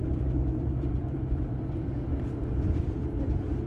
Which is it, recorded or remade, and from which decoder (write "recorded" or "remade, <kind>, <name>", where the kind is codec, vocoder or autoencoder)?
remade, vocoder, BigVGAN v2